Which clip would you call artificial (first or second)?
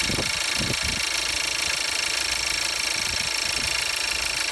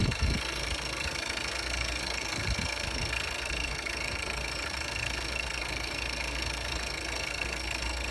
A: second